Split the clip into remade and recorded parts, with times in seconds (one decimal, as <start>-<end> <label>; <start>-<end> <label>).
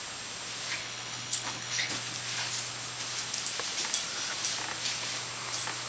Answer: 0.0-0.8 recorded; 0.8-1.9 remade; 1.9-5.9 recorded